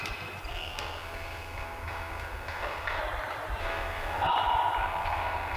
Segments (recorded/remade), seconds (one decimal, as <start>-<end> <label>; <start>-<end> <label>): 0.0-0.5 recorded; 0.5-3.0 remade; 3.0-3.6 recorded; 3.6-4.3 remade; 4.3-4.8 recorded; 4.8-5.6 remade